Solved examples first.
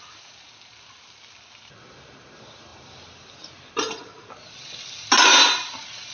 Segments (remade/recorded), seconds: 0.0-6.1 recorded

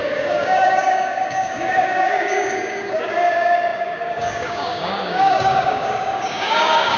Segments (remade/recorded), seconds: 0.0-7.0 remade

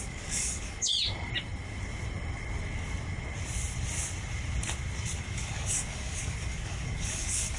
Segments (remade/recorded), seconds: 0.0-0.9 remade; 0.9-5.2 recorded; 5.2-7.6 remade

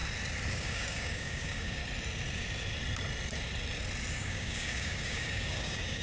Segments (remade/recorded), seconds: 0.0-0.5 recorded; 0.5-1.8 remade; 1.8-4.1 recorded; 4.1-6.0 remade